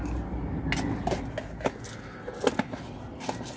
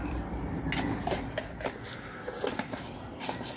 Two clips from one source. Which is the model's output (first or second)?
second